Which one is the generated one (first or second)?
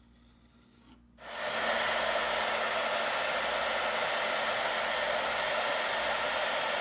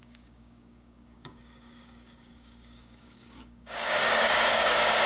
second